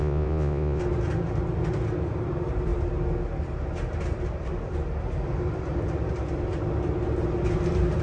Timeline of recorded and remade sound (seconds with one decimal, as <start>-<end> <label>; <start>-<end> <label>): 0.0-0.8 remade; 0.8-8.0 recorded